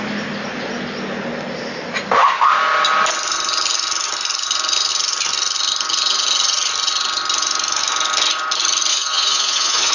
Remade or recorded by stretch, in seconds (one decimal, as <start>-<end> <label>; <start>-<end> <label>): 0.0-8.9 recorded; 8.9-9.9 remade